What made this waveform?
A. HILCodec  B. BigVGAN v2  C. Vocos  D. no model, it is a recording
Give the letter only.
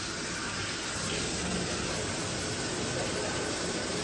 D